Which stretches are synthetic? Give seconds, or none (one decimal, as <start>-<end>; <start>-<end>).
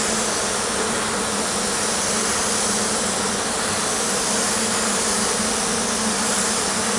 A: none